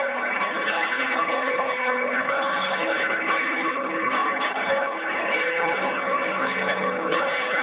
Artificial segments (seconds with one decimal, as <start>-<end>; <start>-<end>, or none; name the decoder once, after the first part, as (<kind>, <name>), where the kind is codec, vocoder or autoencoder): 0.0-7.6 (codec, HILCodec)